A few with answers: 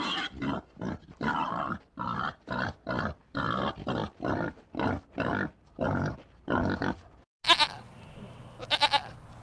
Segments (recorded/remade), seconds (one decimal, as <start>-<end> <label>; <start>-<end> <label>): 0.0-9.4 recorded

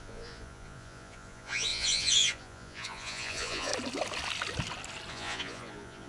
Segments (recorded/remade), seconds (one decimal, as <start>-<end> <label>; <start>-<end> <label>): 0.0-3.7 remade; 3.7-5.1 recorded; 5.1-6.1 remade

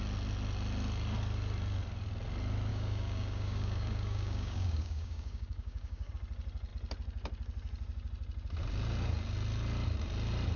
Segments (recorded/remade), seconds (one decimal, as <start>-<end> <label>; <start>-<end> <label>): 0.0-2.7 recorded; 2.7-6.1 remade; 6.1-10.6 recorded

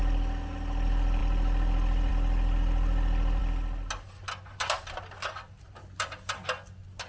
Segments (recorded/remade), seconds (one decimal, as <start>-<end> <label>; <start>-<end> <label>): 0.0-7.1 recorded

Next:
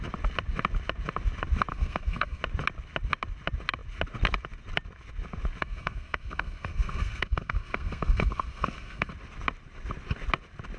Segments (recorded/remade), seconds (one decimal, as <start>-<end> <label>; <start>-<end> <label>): 0.0-1.7 recorded; 1.7-2.4 remade; 2.4-5.6 recorded; 5.6-9.1 remade; 9.1-10.8 recorded

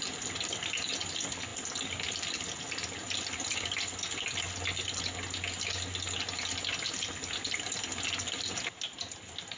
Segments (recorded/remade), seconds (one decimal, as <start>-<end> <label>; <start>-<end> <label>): 0.0-9.6 recorded

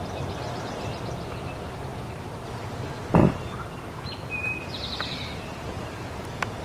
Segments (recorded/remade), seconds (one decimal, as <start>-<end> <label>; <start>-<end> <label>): 0.0-6.6 recorded

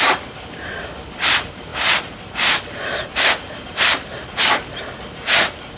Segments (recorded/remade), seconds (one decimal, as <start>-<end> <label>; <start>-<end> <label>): 0.0-5.8 recorded